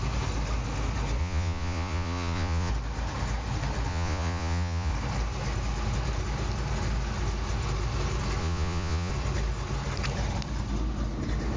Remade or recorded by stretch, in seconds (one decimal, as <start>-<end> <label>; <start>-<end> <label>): 0.0-1.2 recorded; 1.2-2.7 remade; 2.7-3.9 recorded; 3.9-4.9 remade; 4.9-8.4 recorded; 8.4-9.1 remade; 9.1-11.6 recorded